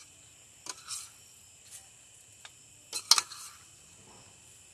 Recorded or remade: recorded